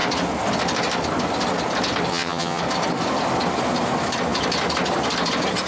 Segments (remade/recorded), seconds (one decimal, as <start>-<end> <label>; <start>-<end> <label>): 0.0-2.1 recorded; 2.1-2.6 remade; 2.6-5.7 recorded